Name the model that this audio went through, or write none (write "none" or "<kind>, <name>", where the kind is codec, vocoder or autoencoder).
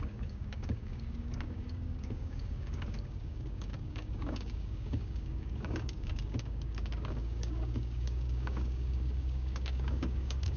codec, DAC